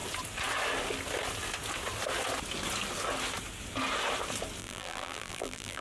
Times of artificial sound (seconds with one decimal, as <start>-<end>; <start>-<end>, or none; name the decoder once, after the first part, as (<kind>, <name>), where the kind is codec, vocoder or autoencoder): 4.6-5.8 (vocoder, BigVGAN v2)